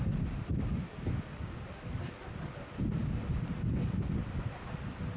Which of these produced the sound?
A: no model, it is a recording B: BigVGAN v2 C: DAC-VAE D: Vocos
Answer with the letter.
A